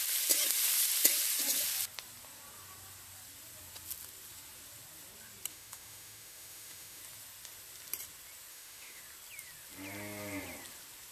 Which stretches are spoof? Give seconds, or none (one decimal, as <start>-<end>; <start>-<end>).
5.5-7.0; 8.5-9.0